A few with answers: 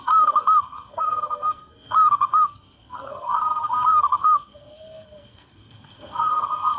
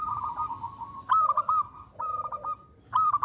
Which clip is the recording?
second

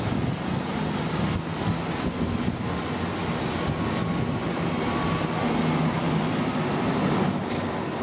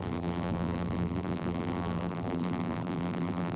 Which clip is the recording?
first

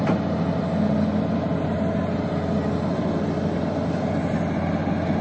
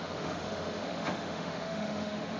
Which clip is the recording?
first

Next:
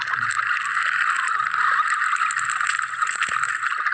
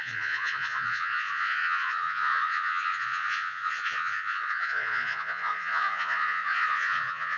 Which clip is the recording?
first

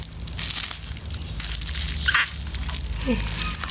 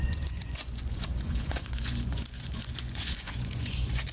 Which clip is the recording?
first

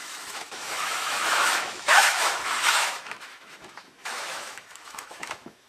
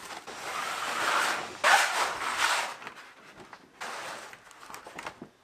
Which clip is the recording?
second